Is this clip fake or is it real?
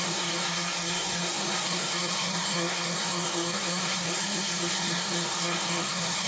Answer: fake